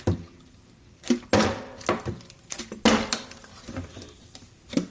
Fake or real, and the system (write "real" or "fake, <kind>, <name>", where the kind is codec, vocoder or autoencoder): real